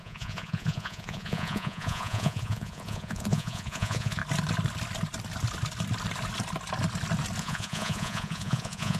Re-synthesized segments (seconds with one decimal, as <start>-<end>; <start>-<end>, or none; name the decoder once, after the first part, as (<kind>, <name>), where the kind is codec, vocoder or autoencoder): 0.0-4.2 (vocoder, Vocos); 7.4-9.0